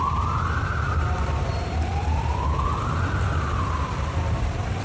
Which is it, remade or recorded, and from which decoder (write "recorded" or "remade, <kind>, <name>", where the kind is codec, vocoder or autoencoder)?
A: recorded